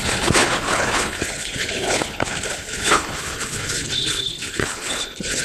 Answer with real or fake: fake